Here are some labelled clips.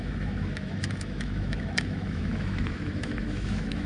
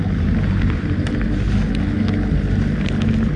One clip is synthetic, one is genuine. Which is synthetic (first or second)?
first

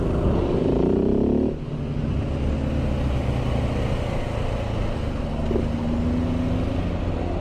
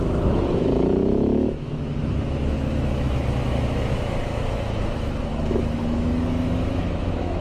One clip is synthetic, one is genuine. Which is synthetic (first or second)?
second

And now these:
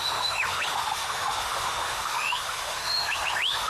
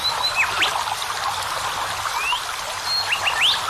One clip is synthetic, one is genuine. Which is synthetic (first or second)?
first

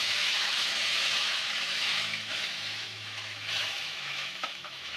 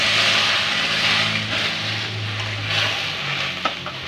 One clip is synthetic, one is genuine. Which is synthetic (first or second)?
first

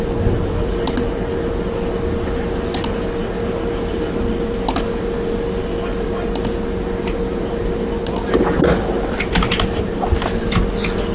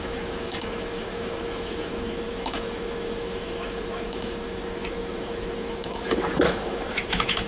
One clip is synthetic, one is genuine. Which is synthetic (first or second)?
second